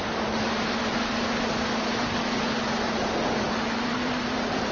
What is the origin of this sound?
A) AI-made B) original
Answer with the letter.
A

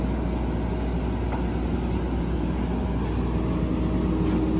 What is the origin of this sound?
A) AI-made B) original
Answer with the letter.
B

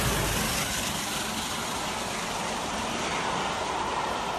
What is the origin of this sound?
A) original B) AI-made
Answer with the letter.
B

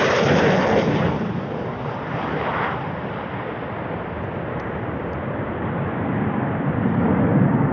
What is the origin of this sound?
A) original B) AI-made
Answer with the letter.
B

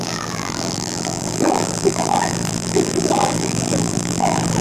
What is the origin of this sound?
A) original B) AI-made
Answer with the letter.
B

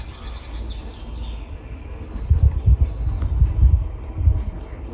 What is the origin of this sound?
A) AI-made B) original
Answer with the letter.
B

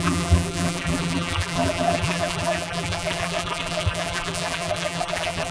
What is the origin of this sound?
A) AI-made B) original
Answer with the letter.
A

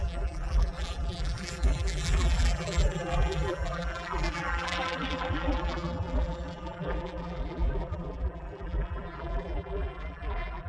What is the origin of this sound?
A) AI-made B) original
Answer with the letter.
A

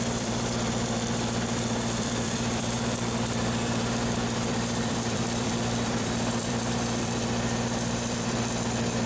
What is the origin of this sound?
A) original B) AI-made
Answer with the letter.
B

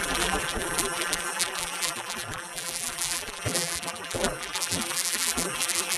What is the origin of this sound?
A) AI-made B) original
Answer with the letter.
A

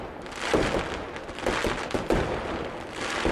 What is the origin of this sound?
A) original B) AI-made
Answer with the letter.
A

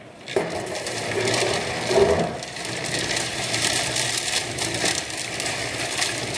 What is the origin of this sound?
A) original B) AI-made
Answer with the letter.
B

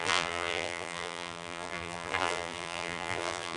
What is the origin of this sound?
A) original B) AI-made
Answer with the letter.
B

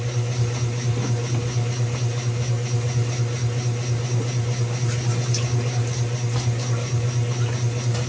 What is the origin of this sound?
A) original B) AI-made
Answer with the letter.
A